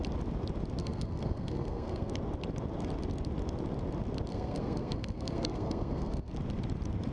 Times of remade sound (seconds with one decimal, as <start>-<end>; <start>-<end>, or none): 0.8-2.1; 4.3-6.3